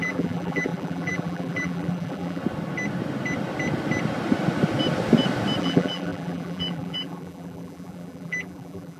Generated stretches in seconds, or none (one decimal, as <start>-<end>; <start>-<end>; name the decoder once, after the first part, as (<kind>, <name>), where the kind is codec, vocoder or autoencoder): 0.0-2.4 (vocoder, BigVGAN v2); 5.6-9.0